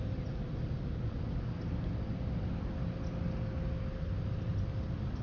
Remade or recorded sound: recorded